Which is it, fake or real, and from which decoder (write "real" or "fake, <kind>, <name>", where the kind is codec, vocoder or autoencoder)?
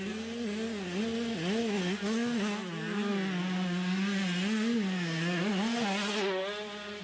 real